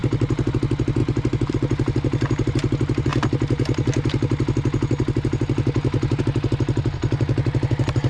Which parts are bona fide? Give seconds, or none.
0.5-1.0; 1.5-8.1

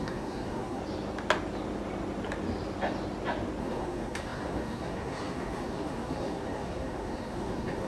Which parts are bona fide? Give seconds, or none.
0.8-3.6

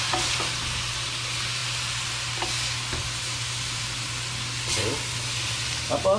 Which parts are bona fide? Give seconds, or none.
0.0-6.2